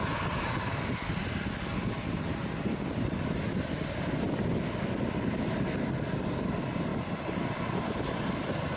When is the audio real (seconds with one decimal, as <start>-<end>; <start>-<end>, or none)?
0.0-8.8